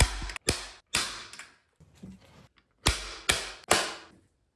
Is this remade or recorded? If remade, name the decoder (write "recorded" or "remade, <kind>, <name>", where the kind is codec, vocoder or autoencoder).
recorded